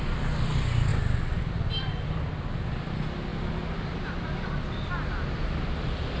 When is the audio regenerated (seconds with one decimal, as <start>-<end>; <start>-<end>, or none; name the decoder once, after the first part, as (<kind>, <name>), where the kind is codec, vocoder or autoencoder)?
none